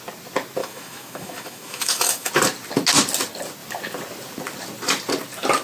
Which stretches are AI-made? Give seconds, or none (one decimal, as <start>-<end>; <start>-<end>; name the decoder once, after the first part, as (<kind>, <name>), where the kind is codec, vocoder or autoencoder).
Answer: 0.6-2.3 (autoencoder, DAC-VAE)